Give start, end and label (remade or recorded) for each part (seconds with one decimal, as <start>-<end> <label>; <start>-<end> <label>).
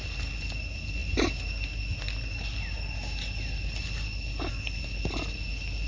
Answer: 0.0-5.9 recorded